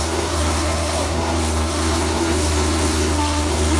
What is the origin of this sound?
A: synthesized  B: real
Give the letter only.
A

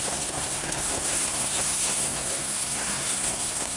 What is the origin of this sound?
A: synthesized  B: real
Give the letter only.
A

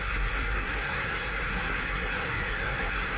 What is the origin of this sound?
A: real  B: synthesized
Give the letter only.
B